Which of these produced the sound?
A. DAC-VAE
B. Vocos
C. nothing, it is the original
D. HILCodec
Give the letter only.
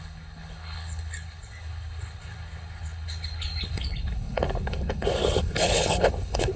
D